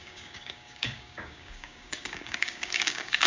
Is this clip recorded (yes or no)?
no